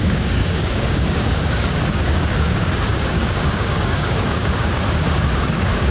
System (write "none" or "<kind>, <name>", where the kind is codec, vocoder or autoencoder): codec, DAC